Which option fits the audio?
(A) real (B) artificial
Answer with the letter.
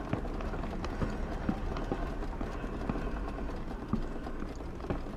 A